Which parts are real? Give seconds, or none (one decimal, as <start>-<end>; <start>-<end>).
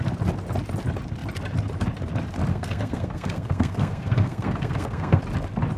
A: 0.0-2.5; 5.2-5.8